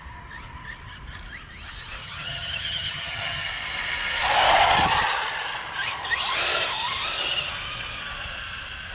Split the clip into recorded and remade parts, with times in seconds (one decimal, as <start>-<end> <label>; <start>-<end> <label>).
0.0-2.0 recorded; 2.0-3.5 remade; 3.5-8.9 recorded